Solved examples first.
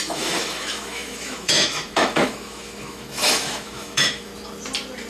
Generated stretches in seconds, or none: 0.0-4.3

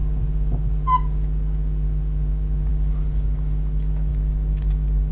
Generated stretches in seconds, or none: none

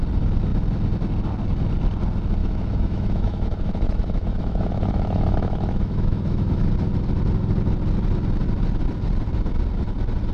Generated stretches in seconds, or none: 2.4-6.7

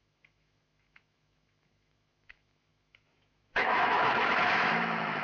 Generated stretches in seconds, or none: 0.0-5.2

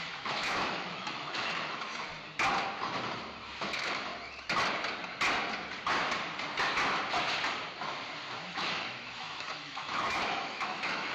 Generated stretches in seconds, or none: 0.0-2.1; 3.6-4.1; 8.5-11.1

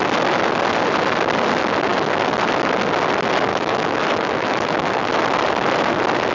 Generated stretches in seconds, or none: 3.5-5.1

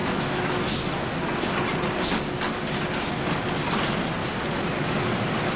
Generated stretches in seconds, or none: 0.0-0.6